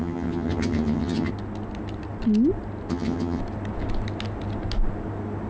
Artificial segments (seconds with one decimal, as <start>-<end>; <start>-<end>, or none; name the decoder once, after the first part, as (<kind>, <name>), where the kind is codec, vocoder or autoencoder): 0.0-1.3 (vocoder, HiFi-GAN); 2.9-3.4